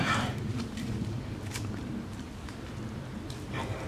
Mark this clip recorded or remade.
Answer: remade